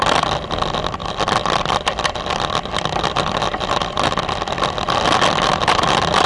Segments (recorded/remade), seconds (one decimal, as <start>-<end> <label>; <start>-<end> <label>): 0.0-1.0 recorded; 1.0-4.8 remade; 4.8-6.3 recorded